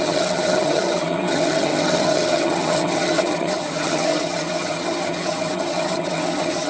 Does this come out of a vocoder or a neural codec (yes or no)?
yes